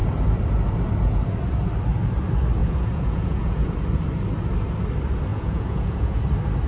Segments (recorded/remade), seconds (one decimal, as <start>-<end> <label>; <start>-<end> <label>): 0.0-2.6 recorded; 2.6-3.7 remade; 3.7-5.3 recorded; 5.3-6.2 remade; 6.2-6.7 recorded